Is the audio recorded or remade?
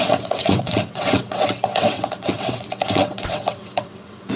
remade